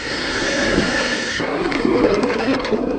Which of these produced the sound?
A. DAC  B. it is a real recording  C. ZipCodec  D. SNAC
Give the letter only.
D